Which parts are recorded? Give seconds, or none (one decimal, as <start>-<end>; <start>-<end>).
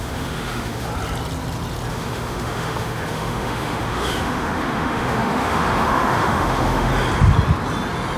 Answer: 0.9-1.9; 6.9-8.2